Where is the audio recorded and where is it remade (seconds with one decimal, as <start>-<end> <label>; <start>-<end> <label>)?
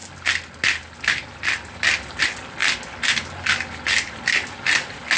0.0-5.2 recorded